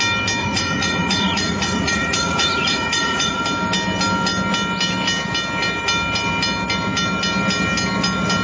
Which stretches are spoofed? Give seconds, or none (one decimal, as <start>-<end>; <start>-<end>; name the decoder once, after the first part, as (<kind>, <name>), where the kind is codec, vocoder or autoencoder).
0.4-3.4 (vocoder, Vocos)